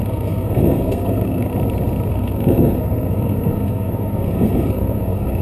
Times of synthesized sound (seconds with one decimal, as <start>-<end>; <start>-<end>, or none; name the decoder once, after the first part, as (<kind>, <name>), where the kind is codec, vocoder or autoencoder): 0.0-1.5 (codec, SNAC); 2.1-5.4